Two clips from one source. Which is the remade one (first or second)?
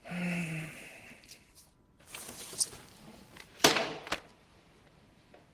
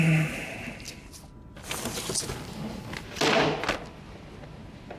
first